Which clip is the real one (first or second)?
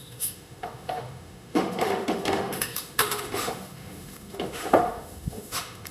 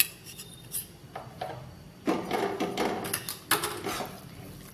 second